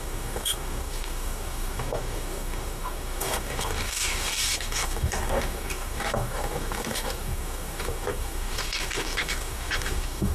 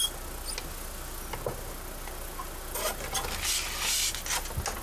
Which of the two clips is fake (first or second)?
first